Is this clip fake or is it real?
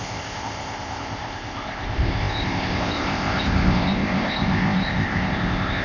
fake